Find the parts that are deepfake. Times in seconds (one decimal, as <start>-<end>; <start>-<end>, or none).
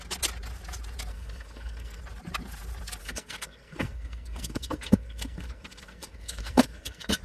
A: 1.1-2.0; 3.0-7.2